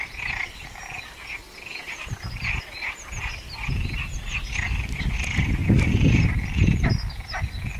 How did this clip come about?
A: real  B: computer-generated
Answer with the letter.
A